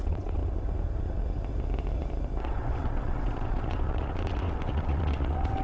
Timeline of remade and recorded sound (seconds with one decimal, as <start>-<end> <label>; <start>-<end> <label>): 0.0-0.4 remade; 0.4-2.4 recorded; 2.4-5.6 remade